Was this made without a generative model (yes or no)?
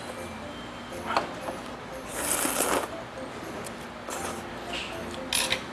yes